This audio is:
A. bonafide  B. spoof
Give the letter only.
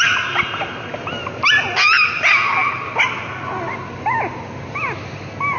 A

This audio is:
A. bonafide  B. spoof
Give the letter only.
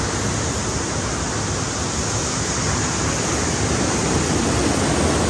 A